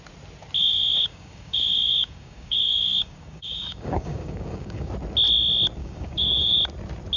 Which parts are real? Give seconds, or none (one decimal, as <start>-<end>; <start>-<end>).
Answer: 0.0-0.6; 4.9-5.8; 6.6-7.2